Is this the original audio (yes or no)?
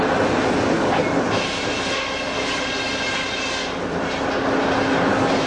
yes